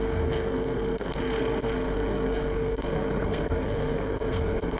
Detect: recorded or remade remade